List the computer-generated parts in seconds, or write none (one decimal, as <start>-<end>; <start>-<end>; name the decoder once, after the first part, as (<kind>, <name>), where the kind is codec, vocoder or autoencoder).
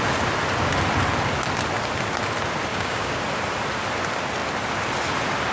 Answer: 2.7-3.2 (codec, DAC)